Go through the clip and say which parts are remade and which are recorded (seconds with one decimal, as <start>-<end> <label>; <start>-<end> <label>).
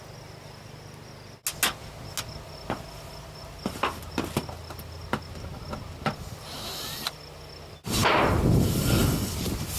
0.0-9.8 recorded